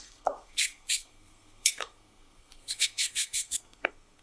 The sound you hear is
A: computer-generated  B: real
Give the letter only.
A